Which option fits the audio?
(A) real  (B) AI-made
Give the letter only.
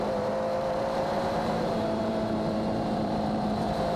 B